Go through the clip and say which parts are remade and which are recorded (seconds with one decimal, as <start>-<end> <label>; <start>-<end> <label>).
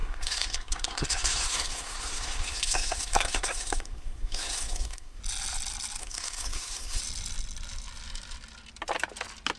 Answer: 0.0-5.2 remade; 5.2-6.0 recorded; 6.0-7.0 remade; 7.0-9.6 recorded